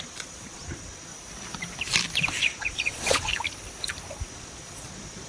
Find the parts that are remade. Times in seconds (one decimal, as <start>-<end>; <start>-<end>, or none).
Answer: 0.0-1.1; 2.4-3.3; 4.3-5.3